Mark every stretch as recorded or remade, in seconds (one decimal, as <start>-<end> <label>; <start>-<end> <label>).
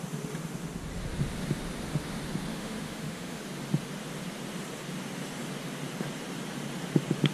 0.0-2.5 recorded; 2.5-3.4 remade; 3.4-7.3 recorded